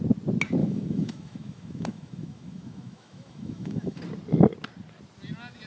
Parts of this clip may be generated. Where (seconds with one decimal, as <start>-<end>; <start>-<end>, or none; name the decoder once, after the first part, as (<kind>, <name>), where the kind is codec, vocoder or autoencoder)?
0.6-4.0 (autoencoder, DAC-VAE)